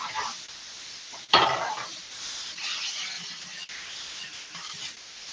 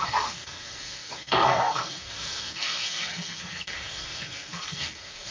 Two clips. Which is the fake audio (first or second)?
second